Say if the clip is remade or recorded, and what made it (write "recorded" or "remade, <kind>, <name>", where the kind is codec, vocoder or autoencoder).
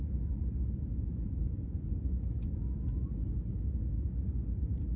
recorded